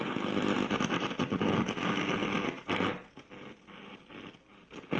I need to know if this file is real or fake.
real